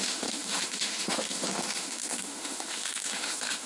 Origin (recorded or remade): remade